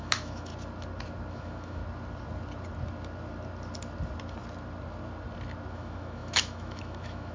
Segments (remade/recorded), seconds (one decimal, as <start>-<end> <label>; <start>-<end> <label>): 0.0-0.5 remade; 0.5-1.3 recorded; 1.3-1.8 remade; 1.8-5.7 recorded; 5.7-7.3 remade